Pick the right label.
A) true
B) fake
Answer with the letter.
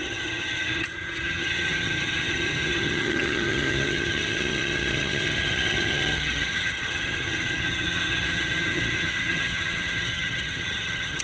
B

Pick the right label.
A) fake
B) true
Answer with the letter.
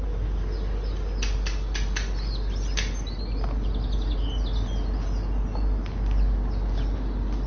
B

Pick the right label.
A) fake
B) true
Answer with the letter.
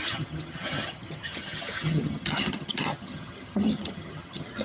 A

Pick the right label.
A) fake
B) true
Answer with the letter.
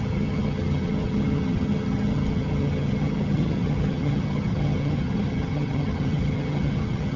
A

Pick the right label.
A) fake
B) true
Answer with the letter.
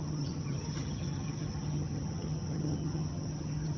A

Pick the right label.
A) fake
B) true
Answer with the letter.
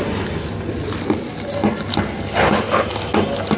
B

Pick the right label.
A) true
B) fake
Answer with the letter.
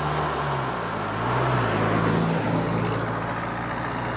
A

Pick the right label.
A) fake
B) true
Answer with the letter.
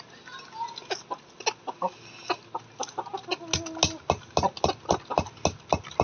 B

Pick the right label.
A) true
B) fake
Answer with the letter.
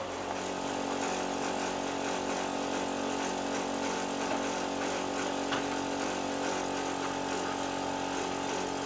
A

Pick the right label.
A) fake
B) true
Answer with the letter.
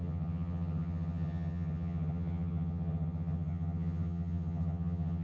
A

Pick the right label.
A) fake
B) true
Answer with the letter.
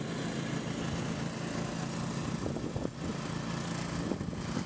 B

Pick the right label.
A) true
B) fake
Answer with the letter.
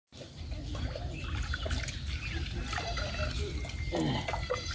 A